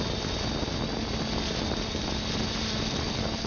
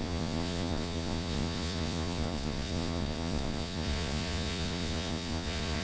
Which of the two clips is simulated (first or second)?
second